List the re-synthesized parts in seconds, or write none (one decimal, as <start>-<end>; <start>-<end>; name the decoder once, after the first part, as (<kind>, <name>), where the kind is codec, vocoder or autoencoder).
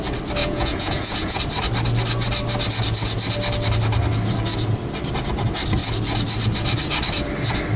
0.4-1.4 (vocoder, Vocos)